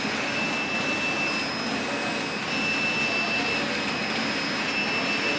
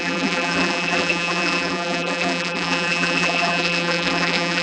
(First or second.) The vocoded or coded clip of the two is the second